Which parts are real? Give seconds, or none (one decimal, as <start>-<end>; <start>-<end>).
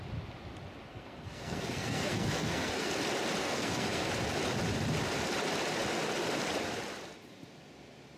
0.0-0.9; 2.9-3.4; 4.1-8.2